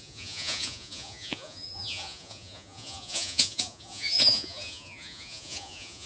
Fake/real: fake